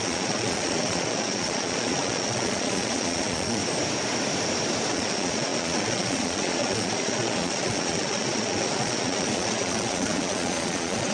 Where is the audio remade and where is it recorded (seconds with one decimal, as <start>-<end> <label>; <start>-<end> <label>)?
0.0-3.6 remade; 3.6-4.9 recorded; 4.9-11.1 remade

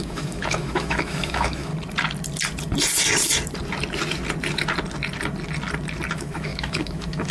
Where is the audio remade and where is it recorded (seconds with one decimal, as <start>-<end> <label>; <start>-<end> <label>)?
0.0-1.7 remade; 1.7-6.1 recorded; 6.1-7.3 remade